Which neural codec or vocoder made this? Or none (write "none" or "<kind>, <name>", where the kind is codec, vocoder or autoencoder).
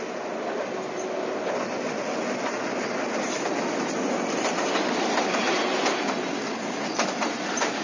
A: none